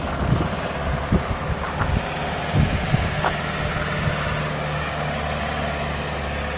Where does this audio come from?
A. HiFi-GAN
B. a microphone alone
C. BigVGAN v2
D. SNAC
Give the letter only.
B